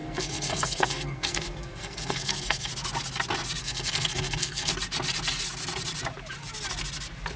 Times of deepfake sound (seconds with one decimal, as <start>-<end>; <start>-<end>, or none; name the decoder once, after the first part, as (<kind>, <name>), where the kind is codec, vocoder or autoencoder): 0.0-2.7 (codec, SNAC); 3.6-4.7